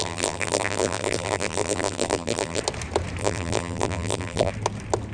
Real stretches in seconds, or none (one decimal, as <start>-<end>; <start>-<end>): 2.6-3.2; 4.5-5.1